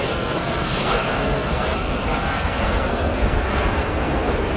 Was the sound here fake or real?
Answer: fake